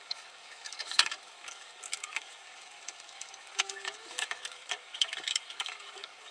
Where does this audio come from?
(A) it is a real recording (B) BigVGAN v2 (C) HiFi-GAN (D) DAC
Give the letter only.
D